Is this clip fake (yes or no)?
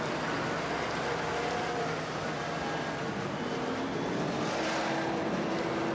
no